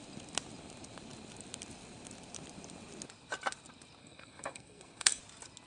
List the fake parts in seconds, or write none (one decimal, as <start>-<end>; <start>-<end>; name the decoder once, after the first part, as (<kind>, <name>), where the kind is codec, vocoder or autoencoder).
4.0-5.2 (codec, SNAC)